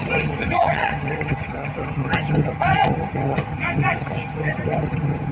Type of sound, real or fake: fake